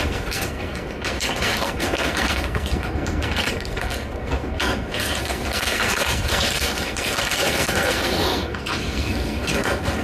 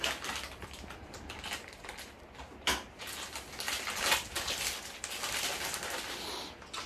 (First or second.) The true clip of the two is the second